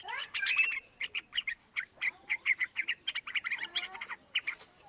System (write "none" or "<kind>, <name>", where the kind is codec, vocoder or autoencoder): vocoder, BigVGAN v2